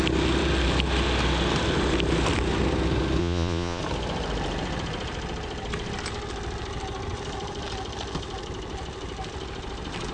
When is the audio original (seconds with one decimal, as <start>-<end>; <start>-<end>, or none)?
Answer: 0.0-3.2; 3.8-10.1